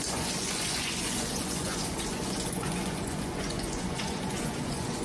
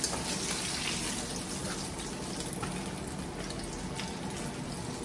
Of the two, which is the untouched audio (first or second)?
second